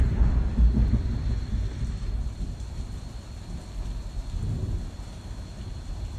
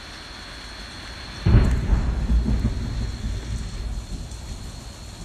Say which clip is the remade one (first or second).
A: first